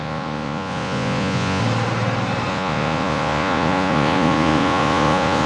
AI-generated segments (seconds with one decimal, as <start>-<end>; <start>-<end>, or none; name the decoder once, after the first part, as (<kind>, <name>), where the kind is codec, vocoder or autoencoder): 0.0-1.6 (vocoder, Vocos); 2.5-5.5